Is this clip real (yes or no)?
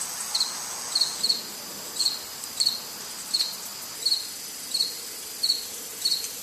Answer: yes